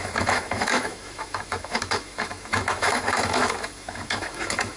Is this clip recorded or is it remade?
remade